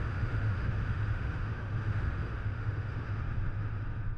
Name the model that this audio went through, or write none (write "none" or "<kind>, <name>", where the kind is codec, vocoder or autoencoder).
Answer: autoencoder, DAC-VAE